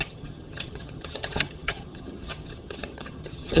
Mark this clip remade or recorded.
remade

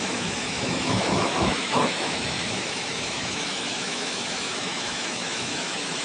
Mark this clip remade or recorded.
remade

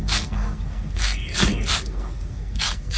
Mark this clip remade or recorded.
remade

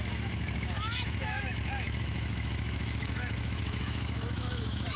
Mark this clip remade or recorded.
remade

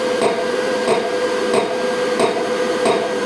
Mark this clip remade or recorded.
remade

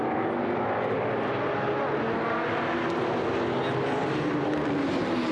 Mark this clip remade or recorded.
recorded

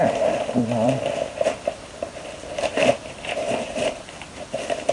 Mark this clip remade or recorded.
remade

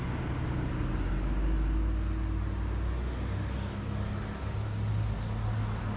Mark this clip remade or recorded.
recorded